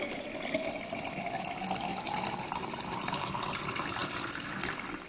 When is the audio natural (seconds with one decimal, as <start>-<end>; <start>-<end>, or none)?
0.0-1.9; 3.4-4.0; 4.6-5.1